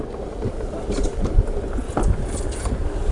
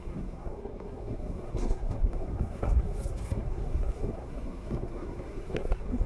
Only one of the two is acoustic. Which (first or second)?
first